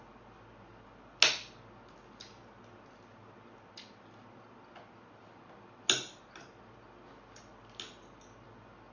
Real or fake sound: real